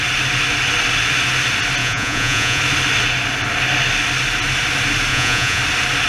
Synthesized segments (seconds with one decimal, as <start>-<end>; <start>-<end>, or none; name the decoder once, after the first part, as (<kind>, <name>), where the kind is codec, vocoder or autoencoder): 1.8-2.6 (vocoder, Vocos); 5.1-5.6